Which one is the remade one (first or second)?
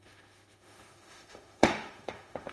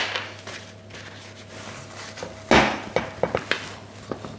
first